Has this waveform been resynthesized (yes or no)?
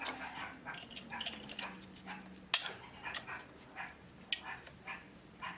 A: no